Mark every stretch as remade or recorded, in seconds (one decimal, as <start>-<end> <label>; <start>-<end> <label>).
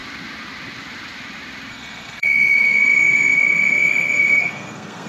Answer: 0.0-1.7 recorded; 1.7-5.1 remade